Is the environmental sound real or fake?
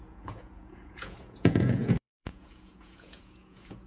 fake